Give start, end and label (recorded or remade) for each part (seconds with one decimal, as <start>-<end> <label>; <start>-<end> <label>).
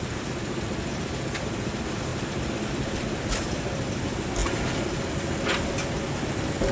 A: 0.0-6.7 recorded